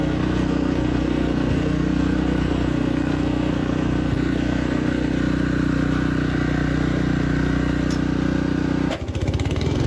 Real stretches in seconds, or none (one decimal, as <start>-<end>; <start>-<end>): 5.1-8.9